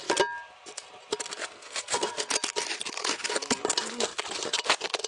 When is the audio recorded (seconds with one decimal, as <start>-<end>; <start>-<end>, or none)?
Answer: 0.0-1.4; 2.3-5.1